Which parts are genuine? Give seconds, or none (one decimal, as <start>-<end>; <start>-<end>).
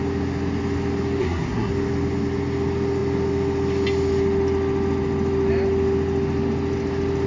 0.0-1.2; 1.7-7.3